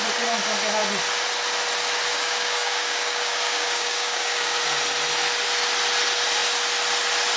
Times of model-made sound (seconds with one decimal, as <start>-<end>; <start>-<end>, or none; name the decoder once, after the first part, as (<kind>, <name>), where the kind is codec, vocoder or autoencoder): 2.1-4.6 (codec, DAC)